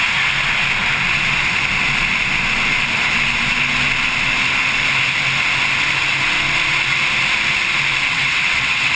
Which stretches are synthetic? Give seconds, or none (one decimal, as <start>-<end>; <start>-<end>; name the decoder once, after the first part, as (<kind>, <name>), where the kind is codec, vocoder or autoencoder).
8.1-8.9 (vocoder, WaveNeXt)